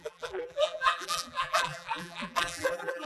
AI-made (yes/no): yes